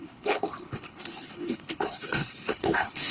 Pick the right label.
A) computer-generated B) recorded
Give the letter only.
A